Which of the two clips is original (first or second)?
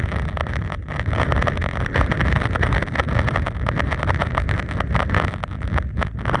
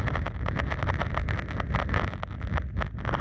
second